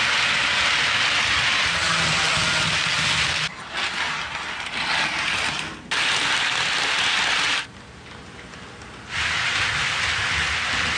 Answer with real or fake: real